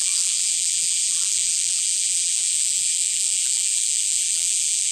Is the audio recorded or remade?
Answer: remade